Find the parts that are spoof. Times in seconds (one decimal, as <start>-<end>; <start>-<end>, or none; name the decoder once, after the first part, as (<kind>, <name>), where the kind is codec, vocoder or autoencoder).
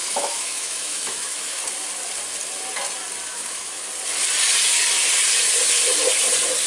0.0-1.6 (autoencoder, DAC-VAE); 3.3-3.8